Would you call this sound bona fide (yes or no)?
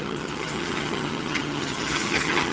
no